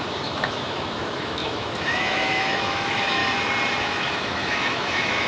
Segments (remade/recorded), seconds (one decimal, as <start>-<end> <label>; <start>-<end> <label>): 0.0-3.2 remade; 3.2-3.8 recorded; 3.8-5.3 remade